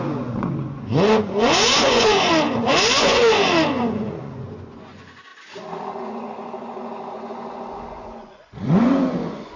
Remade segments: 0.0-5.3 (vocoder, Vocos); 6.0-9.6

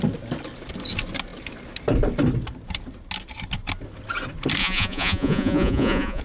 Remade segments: 4.6-6.2 (vocoder, Vocos)

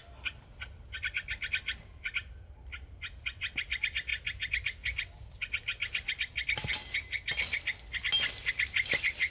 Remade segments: none

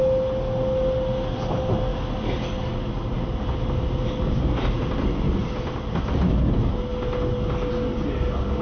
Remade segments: none